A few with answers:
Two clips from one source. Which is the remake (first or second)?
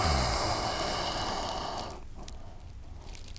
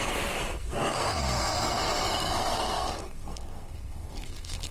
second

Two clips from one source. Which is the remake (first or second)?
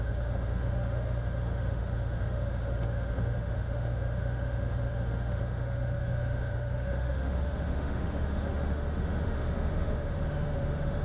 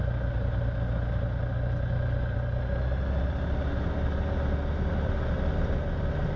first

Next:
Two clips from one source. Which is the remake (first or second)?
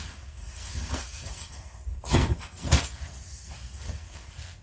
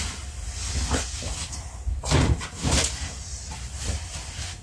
first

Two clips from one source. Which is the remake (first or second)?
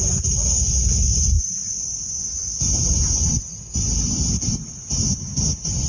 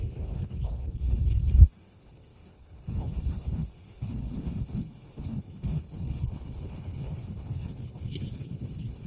second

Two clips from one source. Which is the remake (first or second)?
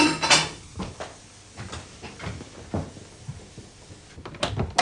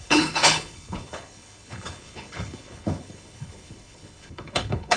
second